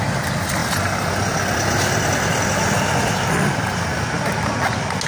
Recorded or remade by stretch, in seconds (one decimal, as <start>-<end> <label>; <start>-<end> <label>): 0.0-5.1 recorded